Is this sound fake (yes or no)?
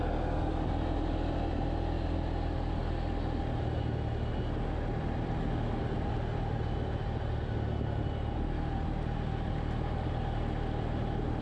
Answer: no